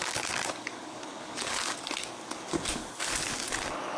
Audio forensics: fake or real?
fake